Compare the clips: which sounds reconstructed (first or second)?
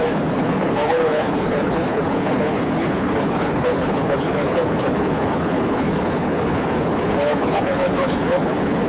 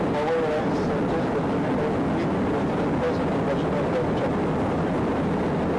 first